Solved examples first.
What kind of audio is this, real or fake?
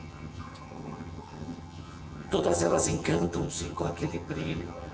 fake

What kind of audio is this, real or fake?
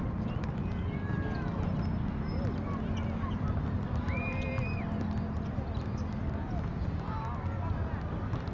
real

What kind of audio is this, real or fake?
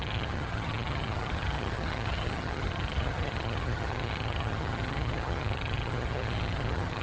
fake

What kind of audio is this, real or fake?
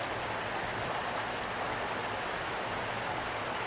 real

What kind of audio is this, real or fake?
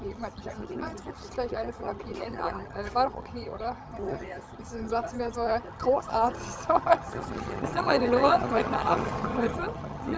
fake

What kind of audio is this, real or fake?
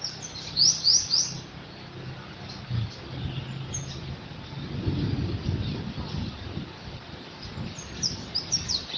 real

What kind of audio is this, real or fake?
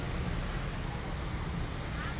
real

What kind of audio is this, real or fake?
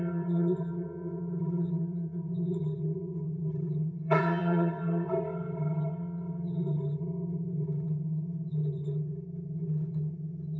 fake